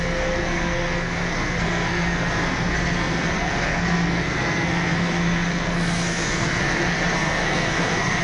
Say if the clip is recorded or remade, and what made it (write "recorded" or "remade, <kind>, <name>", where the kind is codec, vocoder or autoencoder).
remade, codec, SNAC